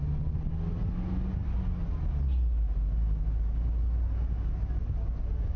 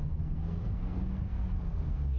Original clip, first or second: first